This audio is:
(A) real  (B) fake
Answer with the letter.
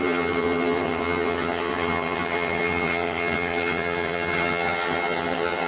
B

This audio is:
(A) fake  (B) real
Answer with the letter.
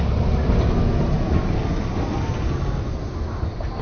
B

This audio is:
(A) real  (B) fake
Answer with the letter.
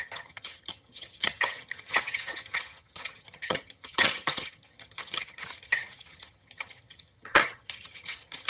B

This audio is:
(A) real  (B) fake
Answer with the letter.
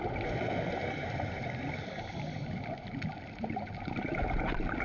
A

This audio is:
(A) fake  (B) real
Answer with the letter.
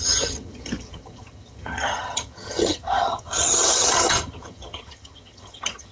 A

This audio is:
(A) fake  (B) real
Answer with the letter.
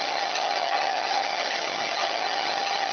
A